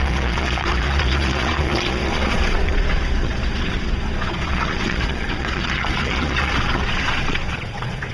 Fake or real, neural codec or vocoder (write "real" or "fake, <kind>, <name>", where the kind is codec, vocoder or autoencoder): fake, vocoder, Vocos